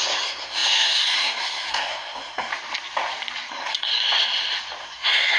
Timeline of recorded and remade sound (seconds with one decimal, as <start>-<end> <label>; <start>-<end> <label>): 0.0-2.5 remade; 2.5-3.5 recorded; 3.5-3.9 remade; 3.9-4.8 recorded; 4.8-5.4 remade